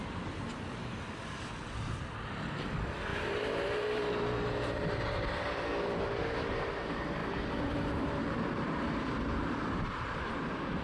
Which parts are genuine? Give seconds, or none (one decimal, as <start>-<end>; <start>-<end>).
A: 0.0-3.1; 5.6-7.2; 9.9-10.8